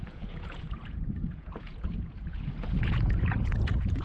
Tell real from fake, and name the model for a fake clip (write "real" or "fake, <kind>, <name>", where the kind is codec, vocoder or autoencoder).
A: fake, vocoder, Vocos